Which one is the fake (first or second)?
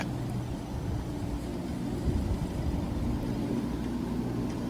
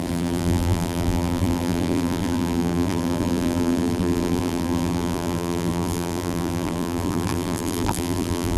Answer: second